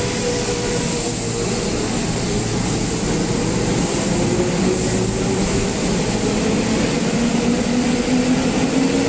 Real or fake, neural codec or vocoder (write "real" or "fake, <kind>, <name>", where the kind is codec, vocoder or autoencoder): real